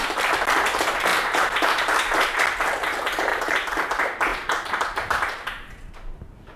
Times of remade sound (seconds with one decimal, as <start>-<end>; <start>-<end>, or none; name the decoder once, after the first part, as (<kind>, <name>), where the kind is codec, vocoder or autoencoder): 1.1-2.4 (vocoder, BigVGAN v2); 3.3-3.9; 4.3-5.7